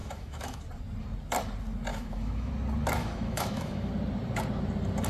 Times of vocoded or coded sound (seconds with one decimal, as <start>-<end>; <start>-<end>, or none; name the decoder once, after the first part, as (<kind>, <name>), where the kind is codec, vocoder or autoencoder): 0.0-0.6 (autoencoder, DAC-VAE); 1.9-2.5; 3.0-3.9